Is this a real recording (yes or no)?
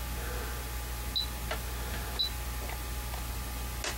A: yes